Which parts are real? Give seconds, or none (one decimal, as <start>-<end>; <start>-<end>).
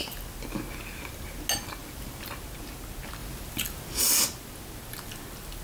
0.0-1.8; 2.3-5.6